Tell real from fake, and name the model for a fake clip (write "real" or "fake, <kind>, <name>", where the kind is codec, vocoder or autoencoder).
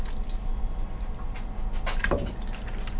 real